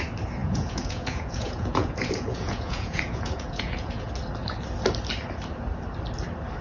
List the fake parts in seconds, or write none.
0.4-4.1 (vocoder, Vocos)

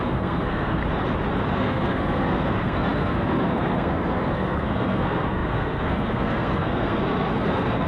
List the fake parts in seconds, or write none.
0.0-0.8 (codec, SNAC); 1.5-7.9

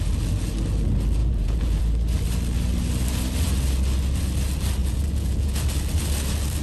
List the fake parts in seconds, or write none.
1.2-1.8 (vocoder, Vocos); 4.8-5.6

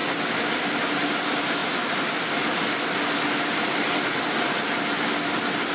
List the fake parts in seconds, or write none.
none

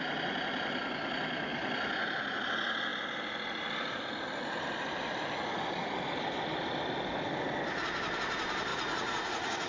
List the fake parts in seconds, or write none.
8.7-9.7 (vocoder, Vocos)

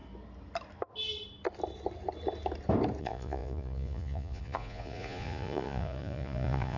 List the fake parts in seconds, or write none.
3.0-6.8 (vocoder, Vocos)

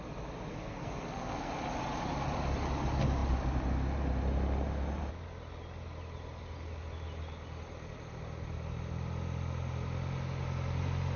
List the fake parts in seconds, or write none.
0.5-1.5 (codec, SNAC)